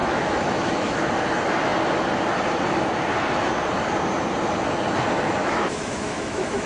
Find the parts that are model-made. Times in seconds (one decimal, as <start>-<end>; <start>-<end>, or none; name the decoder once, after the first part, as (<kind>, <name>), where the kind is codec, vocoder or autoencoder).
0.0-1.1 (autoencoder, DAC-VAE); 5.4-6.7